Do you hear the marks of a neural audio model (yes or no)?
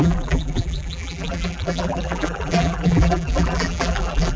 yes